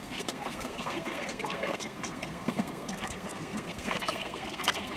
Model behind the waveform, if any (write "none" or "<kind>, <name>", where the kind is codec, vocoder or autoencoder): codec, SNAC